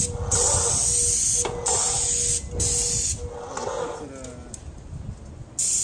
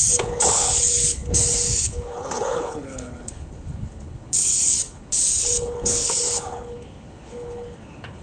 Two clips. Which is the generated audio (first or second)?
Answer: second